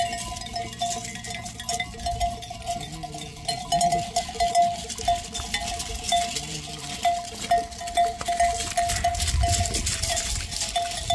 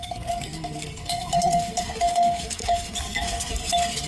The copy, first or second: second